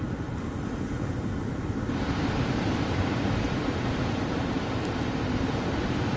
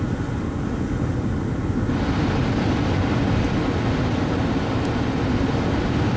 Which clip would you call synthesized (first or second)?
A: first